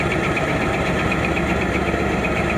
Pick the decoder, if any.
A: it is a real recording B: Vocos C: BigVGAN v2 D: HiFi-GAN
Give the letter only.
C